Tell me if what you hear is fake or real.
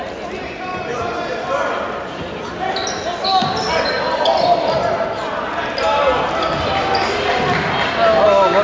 real